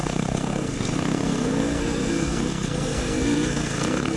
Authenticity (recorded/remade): remade